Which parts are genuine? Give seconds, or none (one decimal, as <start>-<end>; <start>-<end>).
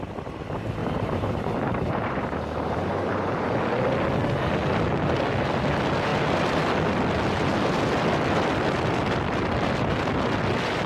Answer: 0.0-0.8; 3.5-10.9